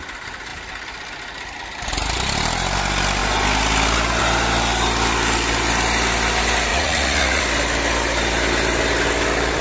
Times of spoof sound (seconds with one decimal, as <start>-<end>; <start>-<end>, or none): 6.7-7.4